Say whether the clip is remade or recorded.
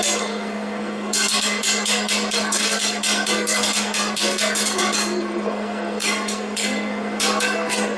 remade